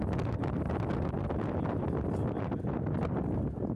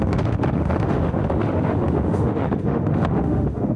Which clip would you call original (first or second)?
first